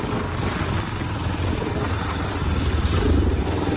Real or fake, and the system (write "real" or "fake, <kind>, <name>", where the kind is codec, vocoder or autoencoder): real